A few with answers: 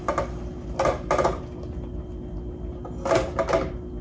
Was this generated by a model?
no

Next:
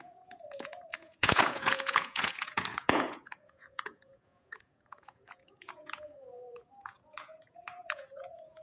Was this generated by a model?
yes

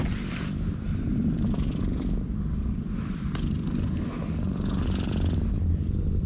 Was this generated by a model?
no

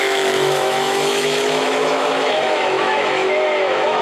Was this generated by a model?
yes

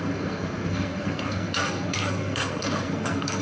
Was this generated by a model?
yes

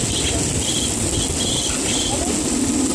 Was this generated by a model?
no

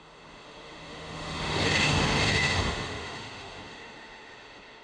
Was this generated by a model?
yes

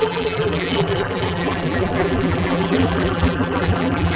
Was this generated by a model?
yes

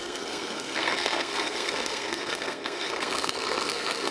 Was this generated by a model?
yes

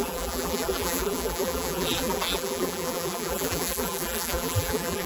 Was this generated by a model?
yes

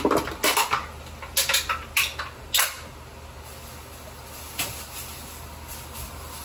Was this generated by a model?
no